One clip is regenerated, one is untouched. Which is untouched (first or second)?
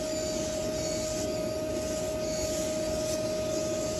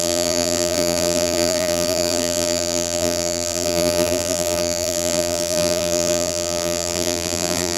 first